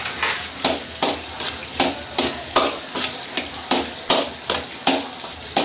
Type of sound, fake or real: real